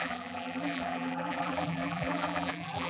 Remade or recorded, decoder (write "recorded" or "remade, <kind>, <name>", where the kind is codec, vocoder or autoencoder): remade, vocoder, BigVGAN v2